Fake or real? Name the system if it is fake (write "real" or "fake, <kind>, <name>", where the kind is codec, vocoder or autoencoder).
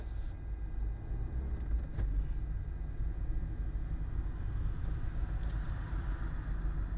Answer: real